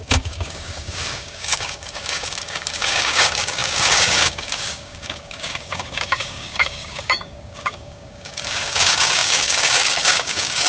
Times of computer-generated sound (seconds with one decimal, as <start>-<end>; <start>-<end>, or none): 0.0-10.7

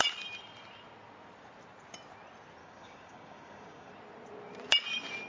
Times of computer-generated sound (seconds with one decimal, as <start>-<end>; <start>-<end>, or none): 2.6-3.9

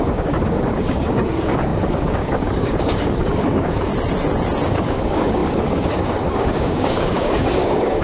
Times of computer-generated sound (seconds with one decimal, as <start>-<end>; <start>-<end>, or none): 0.0-3.9; 4.7-8.0

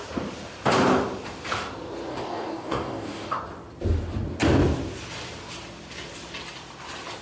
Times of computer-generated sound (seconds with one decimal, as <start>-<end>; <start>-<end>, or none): 2.1-3.4

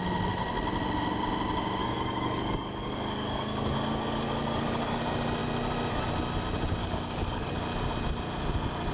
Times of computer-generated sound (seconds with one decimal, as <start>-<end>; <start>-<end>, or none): 1.8-5.0; 6.8-7.5

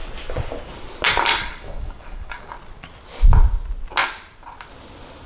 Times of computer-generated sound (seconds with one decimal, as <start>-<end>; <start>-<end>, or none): 1.4-2.5

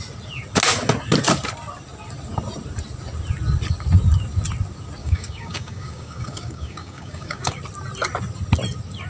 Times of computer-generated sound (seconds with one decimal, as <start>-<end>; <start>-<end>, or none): 5.0-7.6